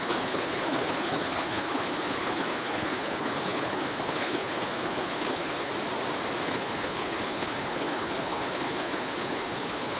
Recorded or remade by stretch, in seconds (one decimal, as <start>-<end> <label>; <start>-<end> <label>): 0.0-5.7 remade; 5.7-6.4 recorded; 6.4-10.0 remade